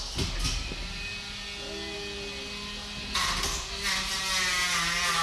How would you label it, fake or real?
real